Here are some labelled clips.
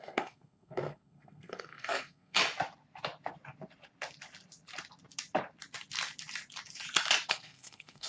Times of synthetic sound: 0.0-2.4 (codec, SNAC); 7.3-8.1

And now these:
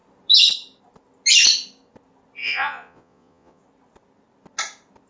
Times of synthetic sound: 2.4-3.6 (vocoder, Vocos)